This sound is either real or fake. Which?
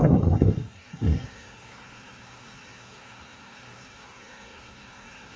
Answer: fake